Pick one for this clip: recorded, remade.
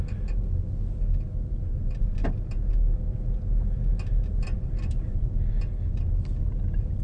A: recorded